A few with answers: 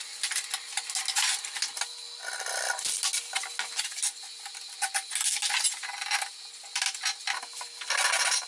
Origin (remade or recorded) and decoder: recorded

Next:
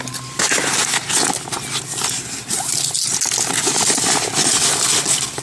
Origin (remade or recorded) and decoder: recorded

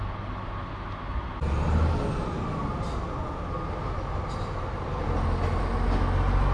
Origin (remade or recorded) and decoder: recorded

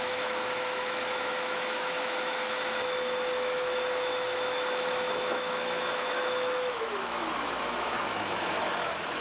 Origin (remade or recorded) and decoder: remade, autoencoder, DAC-VAE